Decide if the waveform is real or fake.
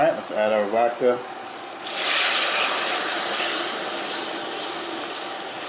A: fake